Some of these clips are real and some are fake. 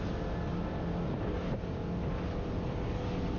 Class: real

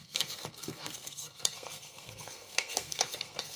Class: fake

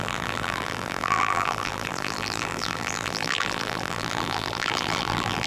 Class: fake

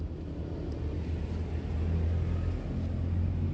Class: real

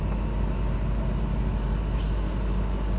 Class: real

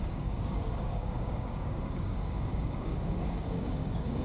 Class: fake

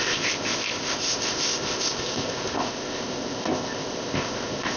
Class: fake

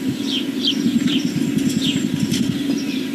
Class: fake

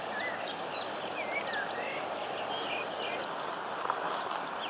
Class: real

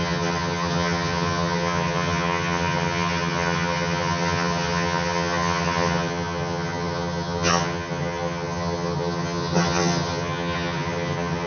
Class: fake